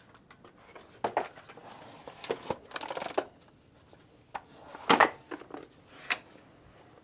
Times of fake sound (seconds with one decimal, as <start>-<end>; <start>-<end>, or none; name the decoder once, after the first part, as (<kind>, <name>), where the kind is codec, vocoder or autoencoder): none